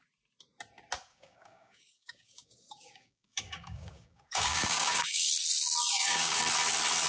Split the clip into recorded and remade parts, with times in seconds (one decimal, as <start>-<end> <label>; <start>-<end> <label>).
0.0-1.1 recorded; 1.1-5.3 remade; 5.3-5.8 recorded; 5.8-6.4 remade; 6.4-7.1 recorded